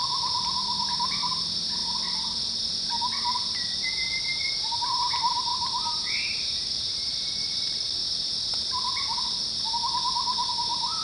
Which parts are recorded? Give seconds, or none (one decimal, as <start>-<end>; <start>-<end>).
0.0-0.5; 1.8-4.6; 8.0-10.5